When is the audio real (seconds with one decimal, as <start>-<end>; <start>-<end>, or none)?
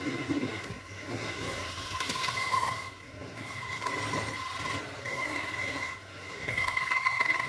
3.9-5.0